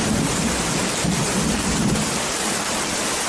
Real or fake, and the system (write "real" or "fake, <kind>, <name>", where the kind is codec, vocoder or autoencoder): real